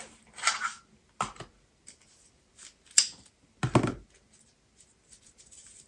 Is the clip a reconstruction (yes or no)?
no